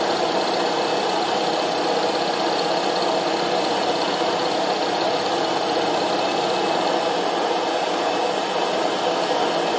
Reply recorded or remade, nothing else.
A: recorded